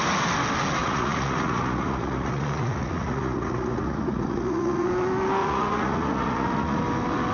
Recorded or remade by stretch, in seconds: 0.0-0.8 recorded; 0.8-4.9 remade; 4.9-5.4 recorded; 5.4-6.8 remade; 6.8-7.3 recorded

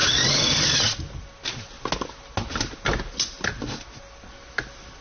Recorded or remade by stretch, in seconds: 0.0-5.0 recorded

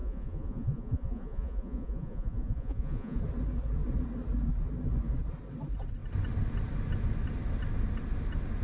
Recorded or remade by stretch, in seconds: 0.0-3.2 remade; 3.2-8.6 recorded